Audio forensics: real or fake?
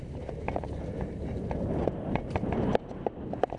real